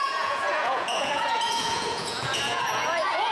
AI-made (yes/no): yes